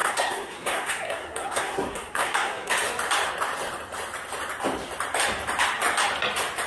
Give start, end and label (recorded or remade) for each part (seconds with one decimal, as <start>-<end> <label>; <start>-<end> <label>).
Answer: 0.0-2.7 remade; 2.7-6.7 recorded